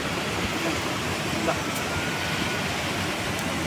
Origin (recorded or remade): recorded